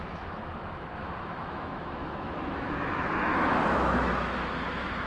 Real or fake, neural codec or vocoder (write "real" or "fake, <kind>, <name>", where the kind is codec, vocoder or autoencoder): fake, autoencoder, DAC-VAE